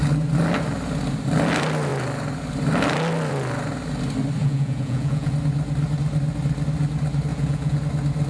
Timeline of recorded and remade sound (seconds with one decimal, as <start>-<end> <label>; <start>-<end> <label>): 0.0-4.4 recorded; 4.4-5.3 remade; 5.3-7.3 recorded; 7.3-7.8 remade; 7.8-8.3 recorded